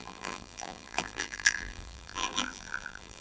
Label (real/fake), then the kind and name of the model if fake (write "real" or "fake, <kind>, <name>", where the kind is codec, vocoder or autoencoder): fake, vocoder, BigVGAN v2